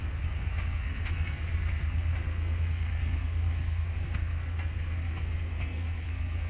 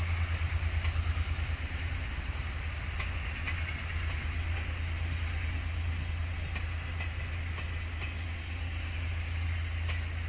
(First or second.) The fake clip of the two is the first